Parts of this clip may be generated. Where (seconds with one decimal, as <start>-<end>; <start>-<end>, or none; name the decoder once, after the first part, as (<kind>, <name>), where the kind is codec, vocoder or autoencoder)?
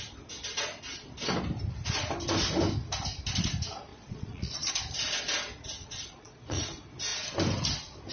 3.9-4.7 (vocoder, Vocos); 5.8-6.6